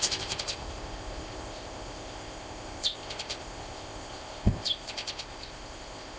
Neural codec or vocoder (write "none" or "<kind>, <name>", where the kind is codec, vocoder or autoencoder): codec, ZipCodec